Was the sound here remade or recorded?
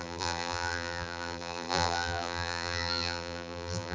remade